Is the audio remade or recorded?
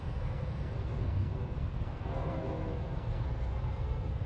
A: remade